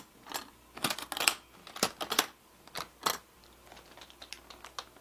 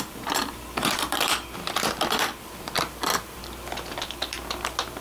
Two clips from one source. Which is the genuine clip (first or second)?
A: first